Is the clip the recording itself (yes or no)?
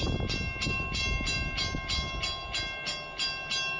yes